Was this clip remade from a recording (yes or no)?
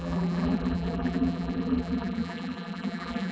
yes